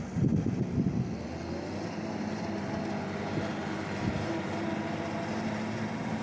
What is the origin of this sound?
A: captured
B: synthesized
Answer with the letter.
A